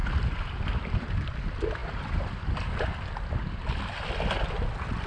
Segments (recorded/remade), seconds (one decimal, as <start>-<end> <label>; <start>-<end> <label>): 0.0-5.1 recorded